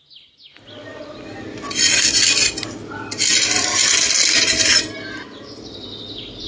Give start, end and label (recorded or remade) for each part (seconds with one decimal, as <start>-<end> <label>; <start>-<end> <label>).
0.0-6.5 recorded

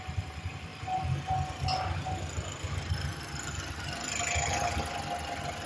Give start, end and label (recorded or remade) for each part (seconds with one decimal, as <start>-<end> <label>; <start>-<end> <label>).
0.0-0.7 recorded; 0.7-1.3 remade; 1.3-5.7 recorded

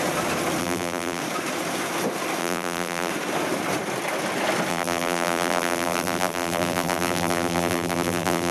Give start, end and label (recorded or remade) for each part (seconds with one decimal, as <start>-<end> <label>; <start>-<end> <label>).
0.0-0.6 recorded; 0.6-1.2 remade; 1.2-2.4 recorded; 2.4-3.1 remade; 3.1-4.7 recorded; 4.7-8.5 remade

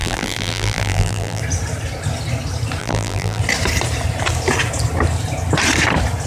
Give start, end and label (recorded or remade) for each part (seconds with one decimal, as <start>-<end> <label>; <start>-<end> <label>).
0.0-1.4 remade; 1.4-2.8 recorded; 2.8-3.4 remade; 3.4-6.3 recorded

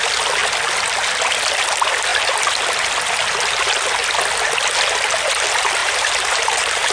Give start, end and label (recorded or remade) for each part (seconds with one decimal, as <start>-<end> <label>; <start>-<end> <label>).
0.0-5.8 recorded; 5.8-6.9 remade